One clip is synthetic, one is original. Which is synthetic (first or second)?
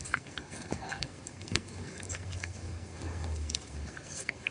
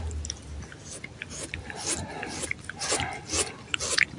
first